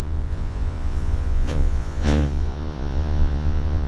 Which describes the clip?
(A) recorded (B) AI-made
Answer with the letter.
B